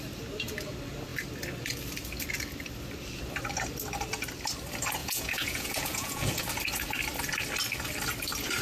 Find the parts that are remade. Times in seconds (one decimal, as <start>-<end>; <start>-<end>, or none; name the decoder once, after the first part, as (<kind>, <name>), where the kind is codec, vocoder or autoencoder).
5.0-6.4 (vocoder, Vocos)